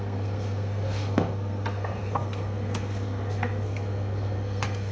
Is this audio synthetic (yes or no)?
yes